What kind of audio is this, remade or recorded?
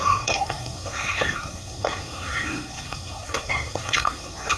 remade